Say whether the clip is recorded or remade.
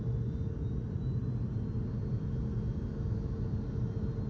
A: recorded